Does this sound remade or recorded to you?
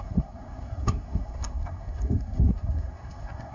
remade